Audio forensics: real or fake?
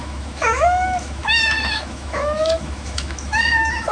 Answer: fake